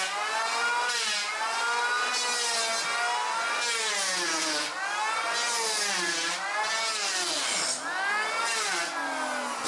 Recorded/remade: recorded